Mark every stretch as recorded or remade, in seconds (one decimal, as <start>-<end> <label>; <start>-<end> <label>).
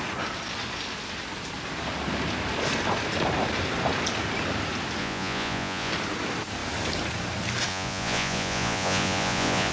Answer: 0.0-5.0 recorded; 5.0-5.9 remade; 5.9-7.7 recorded; 7.7-9.7 remade